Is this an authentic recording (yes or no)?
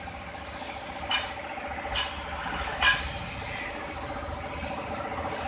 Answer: yes